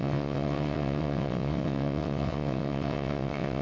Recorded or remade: remade